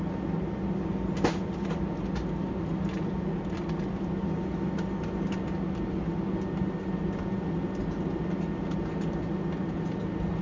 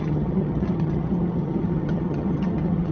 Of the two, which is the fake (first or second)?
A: second